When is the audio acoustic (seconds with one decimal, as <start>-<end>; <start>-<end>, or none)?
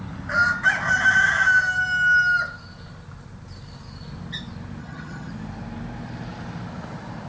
0.0-4.8; 5.3-7.3